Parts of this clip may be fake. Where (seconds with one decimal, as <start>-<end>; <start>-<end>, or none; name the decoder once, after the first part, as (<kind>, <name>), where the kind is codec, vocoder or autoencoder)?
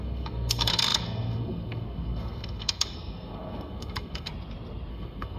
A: 0.0-4.3 (codec, SNAC); 4.9-5.4